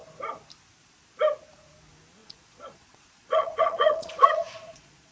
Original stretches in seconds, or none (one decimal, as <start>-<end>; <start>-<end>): 0.0-2.2